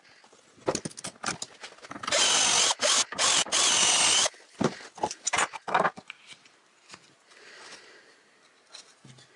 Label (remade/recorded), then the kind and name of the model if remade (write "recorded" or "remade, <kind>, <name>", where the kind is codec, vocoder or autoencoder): recorded